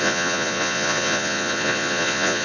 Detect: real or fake fake